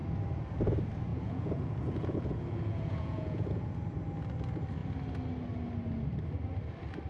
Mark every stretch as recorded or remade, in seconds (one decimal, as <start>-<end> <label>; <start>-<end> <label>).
0.0-1.1 recorded; 1.1-3.7 remade; 3.7-7.1 recorded

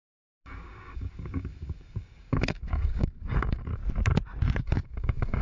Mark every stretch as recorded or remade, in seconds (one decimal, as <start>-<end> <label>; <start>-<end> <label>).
0.0-3.8 remade; 3.8-4.6 recorded; 4.6-5.4 remade

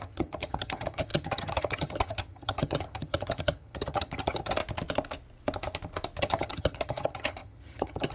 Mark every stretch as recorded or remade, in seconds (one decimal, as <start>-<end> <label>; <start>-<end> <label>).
0.0-4.6 remade; 4.6-6.2 recorded; 6.2-8.1 remade

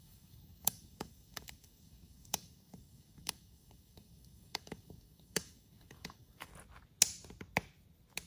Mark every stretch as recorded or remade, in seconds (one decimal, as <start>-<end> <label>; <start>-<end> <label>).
0.0-6.5 remade; 6.5-8.3 recorded

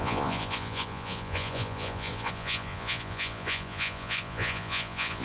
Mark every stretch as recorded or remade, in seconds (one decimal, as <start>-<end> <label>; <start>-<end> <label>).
0.0-5.2 remade